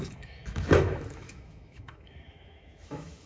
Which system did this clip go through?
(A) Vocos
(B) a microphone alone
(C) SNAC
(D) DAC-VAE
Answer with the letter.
D